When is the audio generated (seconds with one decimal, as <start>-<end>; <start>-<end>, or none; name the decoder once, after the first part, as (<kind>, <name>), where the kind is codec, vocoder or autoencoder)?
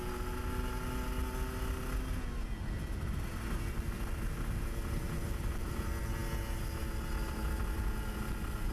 none